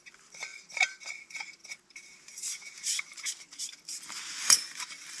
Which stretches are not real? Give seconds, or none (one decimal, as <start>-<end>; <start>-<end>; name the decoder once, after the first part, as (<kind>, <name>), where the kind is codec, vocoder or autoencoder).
1.6-3.3 (vocoder, BigVGAN v2); 4.3-4.8